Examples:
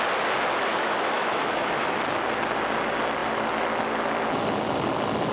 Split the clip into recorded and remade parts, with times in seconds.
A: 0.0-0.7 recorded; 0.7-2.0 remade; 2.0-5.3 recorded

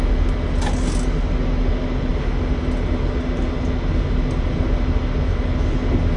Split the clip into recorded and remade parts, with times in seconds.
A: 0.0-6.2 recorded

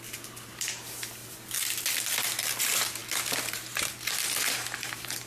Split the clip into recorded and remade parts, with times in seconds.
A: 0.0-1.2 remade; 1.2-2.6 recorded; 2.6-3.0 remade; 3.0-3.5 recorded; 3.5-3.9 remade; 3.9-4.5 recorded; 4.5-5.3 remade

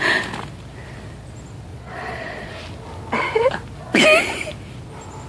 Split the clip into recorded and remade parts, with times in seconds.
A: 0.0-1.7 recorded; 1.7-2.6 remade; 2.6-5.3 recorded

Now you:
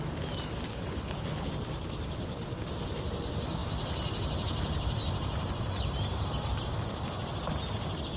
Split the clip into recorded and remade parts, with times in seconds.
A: 0.0-0.7 recorded; 0.7-1.5 remade; 1.5-8.2 recorded

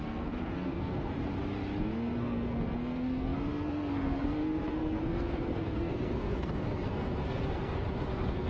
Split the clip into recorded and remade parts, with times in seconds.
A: 0.0-1.2 remade; 1.2-1.8 recorded; 1.8-8.5 remade

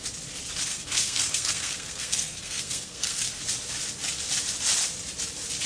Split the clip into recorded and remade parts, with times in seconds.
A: 0.0-0.7 recorded; 0.7-3.4 remade; 3.4-5.7 recorded